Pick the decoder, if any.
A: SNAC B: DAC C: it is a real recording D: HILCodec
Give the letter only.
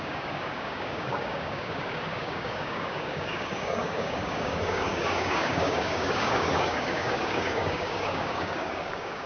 B